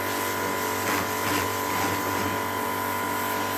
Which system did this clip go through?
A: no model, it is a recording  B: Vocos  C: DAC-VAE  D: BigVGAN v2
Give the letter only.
A